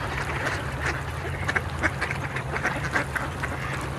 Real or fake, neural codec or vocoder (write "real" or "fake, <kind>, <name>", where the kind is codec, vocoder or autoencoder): real